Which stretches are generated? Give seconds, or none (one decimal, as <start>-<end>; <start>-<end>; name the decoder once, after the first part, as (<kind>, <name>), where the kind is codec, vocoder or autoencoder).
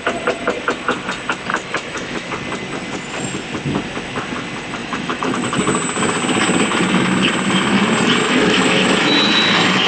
1.5-2.3 (autoencoder, DAC-VAE); 4.8-5.6; 8.3-9.3